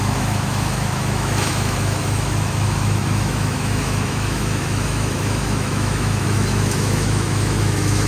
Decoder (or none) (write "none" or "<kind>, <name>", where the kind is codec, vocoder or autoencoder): autoencoder, DAC-VAE